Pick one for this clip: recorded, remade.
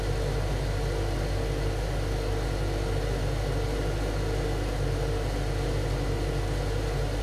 recorded